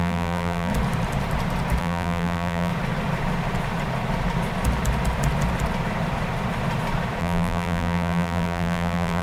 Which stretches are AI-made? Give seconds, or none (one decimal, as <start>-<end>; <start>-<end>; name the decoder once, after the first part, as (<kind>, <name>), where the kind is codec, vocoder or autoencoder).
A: 0.0-0.7 (vocoder, BigVGAN v2); 1.8-2.7; 7.2-9.2